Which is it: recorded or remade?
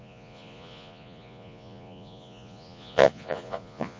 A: remade